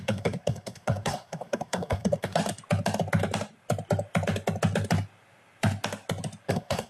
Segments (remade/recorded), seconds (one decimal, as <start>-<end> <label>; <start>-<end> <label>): 0.0-2.4 remade; 2.4-6.5 recorded; 6.5-6.9 remade